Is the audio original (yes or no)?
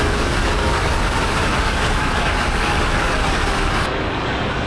no